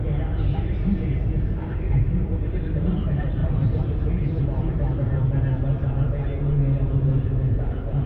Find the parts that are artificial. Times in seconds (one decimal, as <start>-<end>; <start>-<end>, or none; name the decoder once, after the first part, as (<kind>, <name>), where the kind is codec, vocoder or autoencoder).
3.4-4.4 (vocoder, BigVGAN v2)